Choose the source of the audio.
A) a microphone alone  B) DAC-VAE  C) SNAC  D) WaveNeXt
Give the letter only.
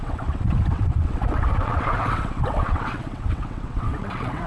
D